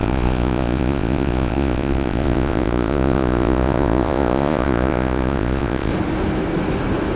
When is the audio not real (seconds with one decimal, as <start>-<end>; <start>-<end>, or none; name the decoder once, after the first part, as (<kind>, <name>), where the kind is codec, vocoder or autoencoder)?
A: 0.0-5.9 (vocoder, Vocos)